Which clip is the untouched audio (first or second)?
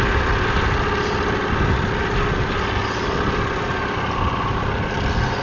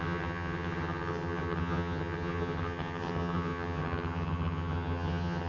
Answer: first